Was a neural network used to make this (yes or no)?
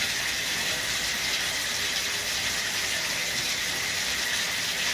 no